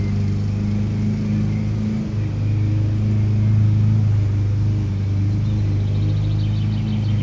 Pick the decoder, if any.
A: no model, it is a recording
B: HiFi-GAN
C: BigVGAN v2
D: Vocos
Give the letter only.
A